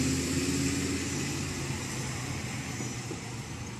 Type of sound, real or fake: real